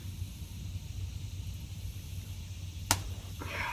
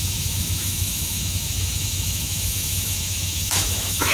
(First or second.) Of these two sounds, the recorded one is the first